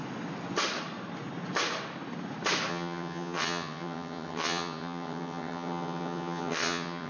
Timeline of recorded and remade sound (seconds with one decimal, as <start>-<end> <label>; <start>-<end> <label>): 0.0-2.7 recorded; 2.7-7.1 remade